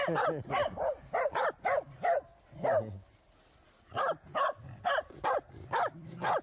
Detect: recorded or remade recorded